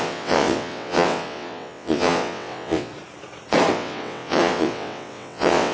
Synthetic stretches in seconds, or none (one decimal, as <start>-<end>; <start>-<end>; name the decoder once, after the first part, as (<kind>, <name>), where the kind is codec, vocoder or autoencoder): 0.0-2.9 (vocoder, WaveNeXt); 3.7-5.7